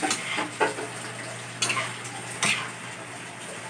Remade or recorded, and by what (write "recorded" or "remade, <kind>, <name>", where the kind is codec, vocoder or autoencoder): recorded